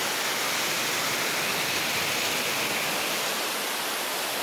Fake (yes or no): no